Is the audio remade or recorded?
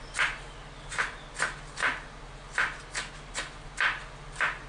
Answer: recorded